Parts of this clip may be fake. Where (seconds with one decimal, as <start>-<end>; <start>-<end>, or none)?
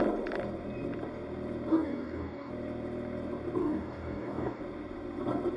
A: 1.7-2.5; 3.6-4.6